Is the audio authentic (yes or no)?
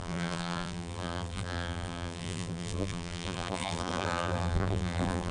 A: no